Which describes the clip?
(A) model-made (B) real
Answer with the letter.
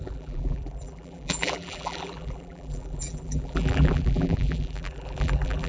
A